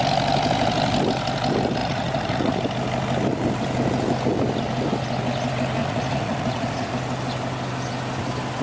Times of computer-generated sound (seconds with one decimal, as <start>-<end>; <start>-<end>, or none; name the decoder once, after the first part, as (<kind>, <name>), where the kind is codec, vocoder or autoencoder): 1.8-2.6 (vocoder, Vocos); 5.8-6.9